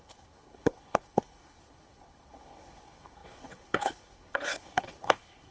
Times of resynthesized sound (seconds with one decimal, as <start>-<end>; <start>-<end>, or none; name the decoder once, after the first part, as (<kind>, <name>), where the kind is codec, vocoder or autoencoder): 0.0-5.5 (codec, HILCodec)